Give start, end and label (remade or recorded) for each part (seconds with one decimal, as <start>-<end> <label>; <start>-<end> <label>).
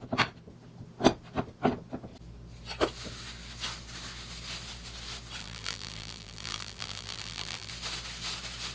0.0-5.4 recorded; 5.4-7.7 remade; 7.7-8.7 recorded